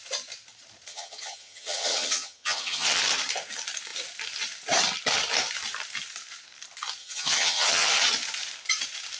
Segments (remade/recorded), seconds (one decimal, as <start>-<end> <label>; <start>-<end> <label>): 0.0-0.9 recorded; 0.9-3.0 remade; 3.0-7.0 recorded; 7.0-7.9 remade; 7.9-9.2 recorded